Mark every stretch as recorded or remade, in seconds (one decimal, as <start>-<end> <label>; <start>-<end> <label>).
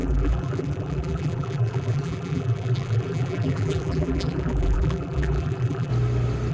0.0-5.9 remade; 5.9-6.5 recorded